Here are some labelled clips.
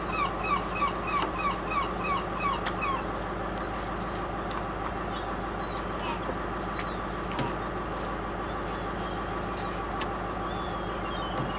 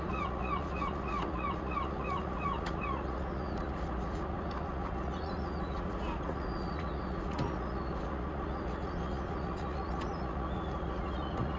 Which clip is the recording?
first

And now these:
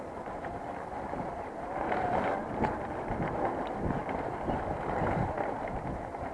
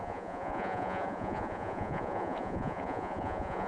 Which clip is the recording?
first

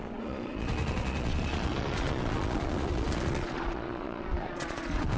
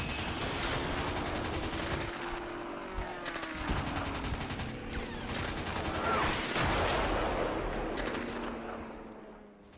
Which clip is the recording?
second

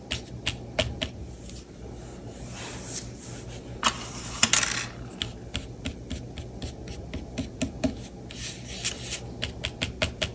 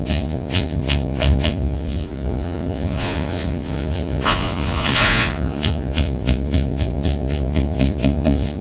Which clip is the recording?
first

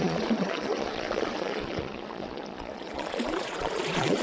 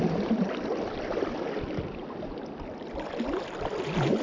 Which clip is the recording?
second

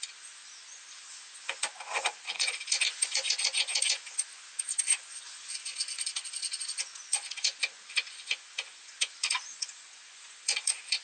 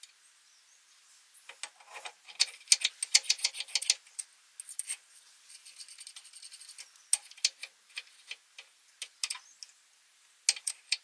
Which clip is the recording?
second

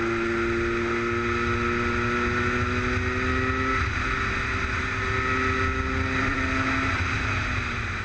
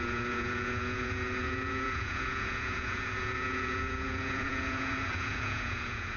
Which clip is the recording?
first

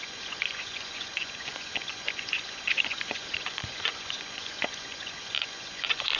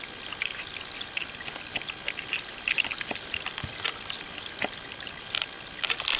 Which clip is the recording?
second